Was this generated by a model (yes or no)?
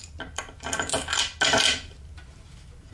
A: no